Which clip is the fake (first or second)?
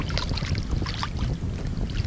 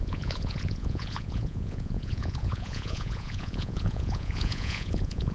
second